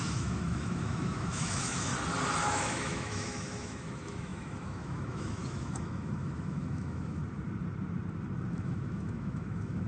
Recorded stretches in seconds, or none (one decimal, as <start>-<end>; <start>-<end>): 1.9-2.4; 7.2-8.5